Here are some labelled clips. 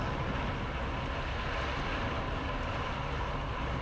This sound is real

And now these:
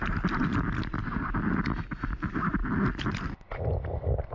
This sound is real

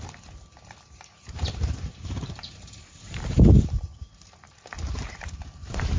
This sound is fake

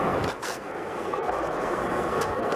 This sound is fake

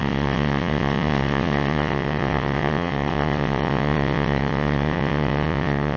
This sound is fake